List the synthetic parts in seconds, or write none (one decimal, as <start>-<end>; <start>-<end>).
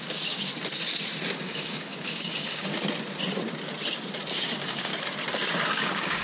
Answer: 0.0-0.5; 1.4-2.7; 4.4-4.9; 5.5-6.2